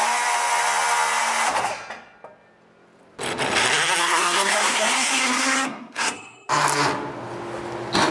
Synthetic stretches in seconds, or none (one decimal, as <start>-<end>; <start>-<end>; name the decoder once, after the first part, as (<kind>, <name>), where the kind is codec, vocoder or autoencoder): 4.0-6.5 (codec, SNAC)